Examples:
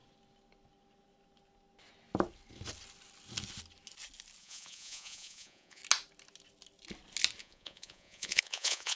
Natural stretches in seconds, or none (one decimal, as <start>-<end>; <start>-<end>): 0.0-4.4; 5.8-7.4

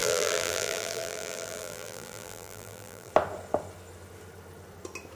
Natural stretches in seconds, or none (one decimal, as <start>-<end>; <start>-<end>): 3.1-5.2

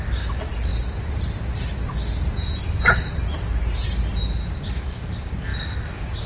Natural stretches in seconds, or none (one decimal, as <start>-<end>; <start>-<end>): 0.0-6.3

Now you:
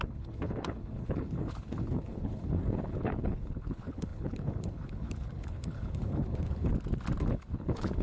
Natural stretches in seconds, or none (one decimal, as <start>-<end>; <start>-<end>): 6.7-7.2

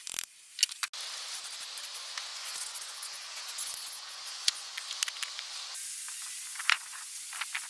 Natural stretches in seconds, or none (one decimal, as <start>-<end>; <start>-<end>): 0.0-2.3; 4.8-6.5; 7.2-7.7

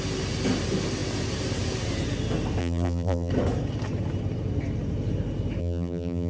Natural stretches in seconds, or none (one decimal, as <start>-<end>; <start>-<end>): 0.0-2.6; 3.3-5.6